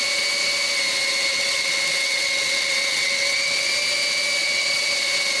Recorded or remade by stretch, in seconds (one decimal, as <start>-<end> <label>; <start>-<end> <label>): 0.0-1.3 recorded; 1.3-3.7 remade; 3.7-4.4 recorded; 4.4-4.9 remade; 4.9-5.4 recorded